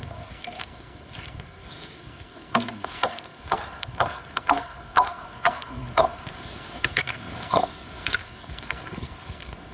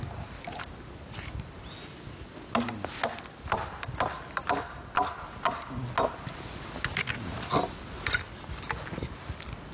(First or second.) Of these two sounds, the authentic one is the second